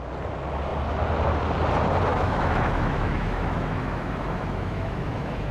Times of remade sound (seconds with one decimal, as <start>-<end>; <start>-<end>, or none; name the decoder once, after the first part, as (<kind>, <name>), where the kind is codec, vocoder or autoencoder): 2.1-5.5 (autoencoder, DAC-VAE)